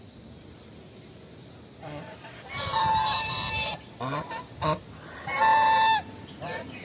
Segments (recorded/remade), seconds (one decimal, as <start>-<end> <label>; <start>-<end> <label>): 0.0-6.8 recorded